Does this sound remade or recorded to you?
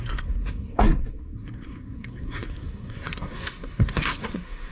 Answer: remade